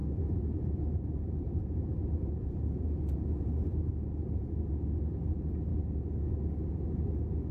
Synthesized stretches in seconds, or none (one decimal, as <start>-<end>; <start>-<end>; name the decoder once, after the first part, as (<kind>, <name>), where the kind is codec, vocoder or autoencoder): 0.0-4.5 (vocoder, BigVGAN v2)